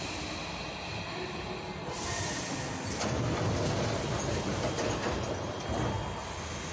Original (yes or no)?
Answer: yes